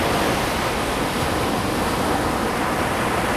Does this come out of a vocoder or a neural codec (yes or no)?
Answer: no